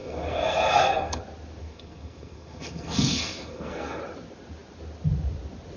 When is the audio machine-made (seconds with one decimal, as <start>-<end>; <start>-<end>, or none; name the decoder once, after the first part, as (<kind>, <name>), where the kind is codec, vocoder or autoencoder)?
0.0-1.2 (codec, SNAC); 1.6-4.0